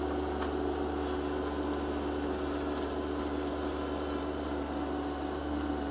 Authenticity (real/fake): real